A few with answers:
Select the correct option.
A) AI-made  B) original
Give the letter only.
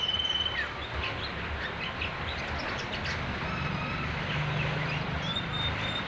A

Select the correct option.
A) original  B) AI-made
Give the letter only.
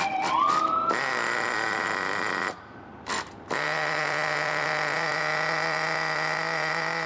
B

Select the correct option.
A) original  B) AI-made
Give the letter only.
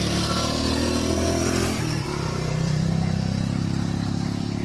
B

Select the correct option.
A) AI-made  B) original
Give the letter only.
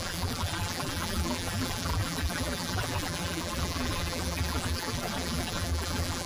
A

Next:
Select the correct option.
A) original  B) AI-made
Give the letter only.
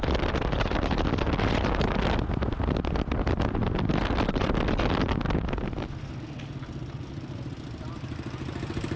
A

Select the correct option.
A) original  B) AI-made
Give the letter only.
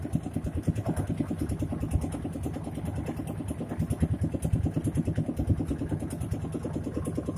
A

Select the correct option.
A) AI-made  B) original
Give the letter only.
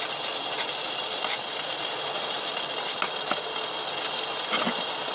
B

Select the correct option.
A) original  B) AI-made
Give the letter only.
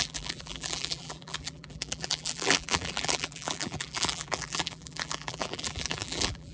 B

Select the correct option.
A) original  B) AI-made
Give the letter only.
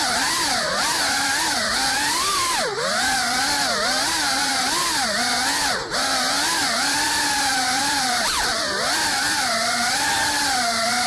B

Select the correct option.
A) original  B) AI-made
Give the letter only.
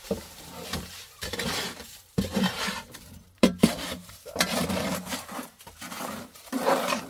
B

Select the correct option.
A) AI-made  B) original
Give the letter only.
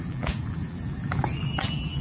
A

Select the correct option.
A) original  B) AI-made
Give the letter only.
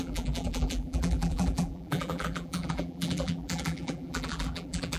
B